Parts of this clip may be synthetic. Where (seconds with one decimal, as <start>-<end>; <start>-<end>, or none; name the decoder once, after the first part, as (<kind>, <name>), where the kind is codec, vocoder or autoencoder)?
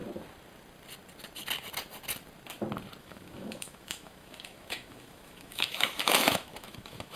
3.0-7.2 (autoencoder, DAC-VAE)